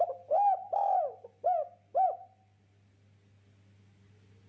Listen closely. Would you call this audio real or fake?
real